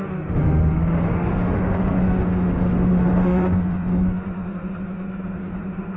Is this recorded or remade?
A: remade